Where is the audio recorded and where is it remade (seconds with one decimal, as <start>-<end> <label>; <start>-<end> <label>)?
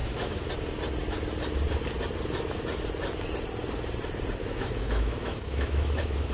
0.0-0.5 remade; 0.5-4.4 recorded; 4.4-6.3 remade